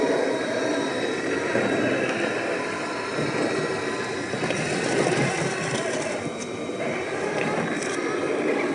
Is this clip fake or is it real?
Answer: fake